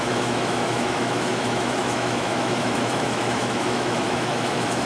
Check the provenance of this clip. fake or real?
fake